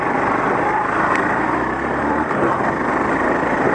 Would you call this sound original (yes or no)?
no